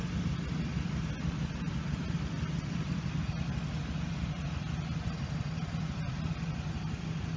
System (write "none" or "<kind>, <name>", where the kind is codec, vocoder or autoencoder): none